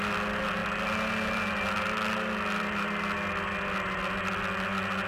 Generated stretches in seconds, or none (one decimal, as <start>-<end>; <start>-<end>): none